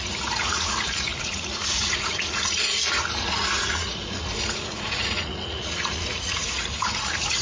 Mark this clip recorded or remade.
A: remade